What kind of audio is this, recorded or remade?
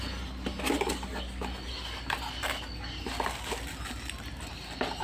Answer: recorded